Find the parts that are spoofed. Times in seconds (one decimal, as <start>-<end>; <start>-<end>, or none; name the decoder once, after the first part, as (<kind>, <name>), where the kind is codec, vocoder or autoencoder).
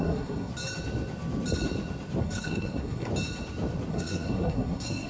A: 0.0-0.5 (codec, SNAC); 2.2-3.1; 3.9-5.1